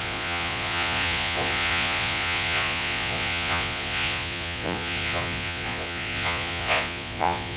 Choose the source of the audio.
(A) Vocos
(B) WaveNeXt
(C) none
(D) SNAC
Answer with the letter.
A